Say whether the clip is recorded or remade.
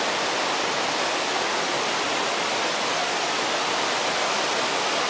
recorded